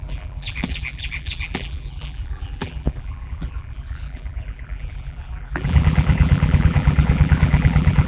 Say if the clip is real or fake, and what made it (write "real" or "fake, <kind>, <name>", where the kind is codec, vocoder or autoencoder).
fake, vocoder, BigVGAN v2